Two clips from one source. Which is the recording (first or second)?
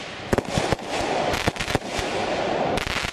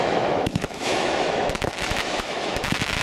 first